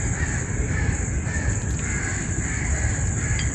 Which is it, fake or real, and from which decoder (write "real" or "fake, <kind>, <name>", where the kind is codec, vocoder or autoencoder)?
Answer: fake, vocoder, BigVGAN v2